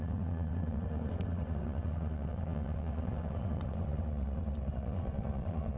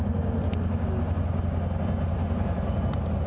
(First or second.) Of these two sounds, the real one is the second